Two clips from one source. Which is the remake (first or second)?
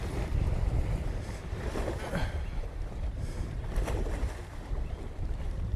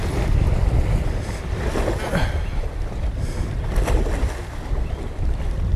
first